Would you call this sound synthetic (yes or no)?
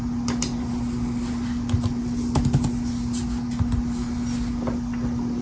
no